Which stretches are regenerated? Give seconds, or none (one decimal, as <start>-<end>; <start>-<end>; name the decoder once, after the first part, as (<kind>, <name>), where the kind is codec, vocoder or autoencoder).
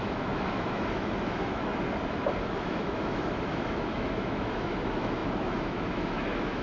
0.0-1.7 (autoencoder, DAC-VAE); 2.5-6.6